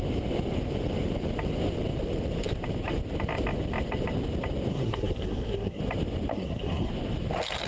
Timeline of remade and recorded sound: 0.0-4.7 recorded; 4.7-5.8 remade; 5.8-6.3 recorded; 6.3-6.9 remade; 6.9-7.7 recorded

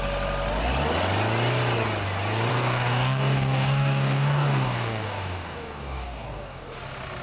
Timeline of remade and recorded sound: 0.0-2.5 recorded; 2.5-6.8 remade; 6.8-7.2 recorded

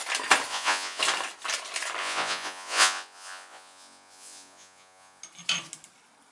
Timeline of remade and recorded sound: 0.0-0.5 recorded; 0.5-1.0 remade; 1.0-2.0 recorded; 2.0-5.2 remade; 5.2-6.3 recorded

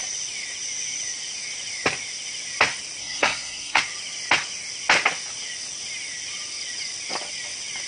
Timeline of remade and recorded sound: 0.0-3.0 recorded; 3.0-3.8 remade; 3.8-7.9 recorded

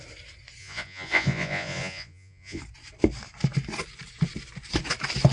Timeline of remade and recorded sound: 0.0-0.6 recorded; 0.6-2.6 remade; 2.6-5.3 recorded

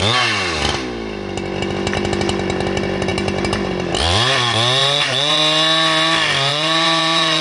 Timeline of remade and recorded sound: 0.0-4.8 recorded; 4.8-5.4 remade; 5.4-6.5 recorded; 6.5-7.4 remade